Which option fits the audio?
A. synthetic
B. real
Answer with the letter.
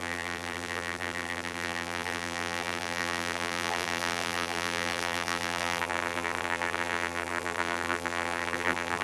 A